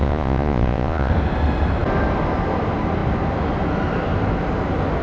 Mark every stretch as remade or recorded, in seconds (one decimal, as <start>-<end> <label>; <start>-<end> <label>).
0.0-1.1 remade; 1.1-5.0 recorded